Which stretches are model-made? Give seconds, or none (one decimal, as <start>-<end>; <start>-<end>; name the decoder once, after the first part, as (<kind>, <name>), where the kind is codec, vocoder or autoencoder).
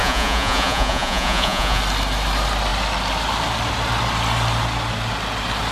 0.0-1.8 (vocoder, Vocos)